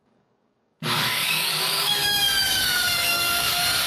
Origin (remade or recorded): remade